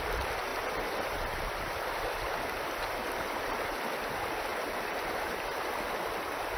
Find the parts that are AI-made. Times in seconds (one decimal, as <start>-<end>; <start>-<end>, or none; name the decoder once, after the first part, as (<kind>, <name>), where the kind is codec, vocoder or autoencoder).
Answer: 4.5-5.6 (vocoder, BigVGAN v2)